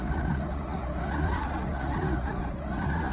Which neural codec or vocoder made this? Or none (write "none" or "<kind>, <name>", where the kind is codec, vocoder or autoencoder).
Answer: vocoder, Vocos